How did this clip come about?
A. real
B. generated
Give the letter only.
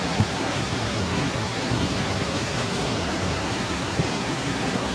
B